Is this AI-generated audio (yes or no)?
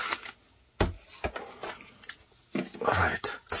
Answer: no